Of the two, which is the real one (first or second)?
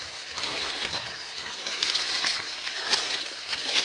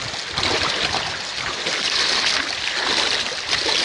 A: second